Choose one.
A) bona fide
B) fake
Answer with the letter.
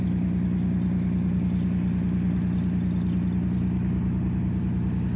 A